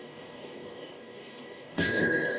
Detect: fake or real fake